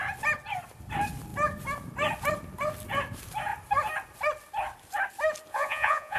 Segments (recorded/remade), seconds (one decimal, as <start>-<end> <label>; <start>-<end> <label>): 0.0-5.5 recorded; 5.5-6.2 remade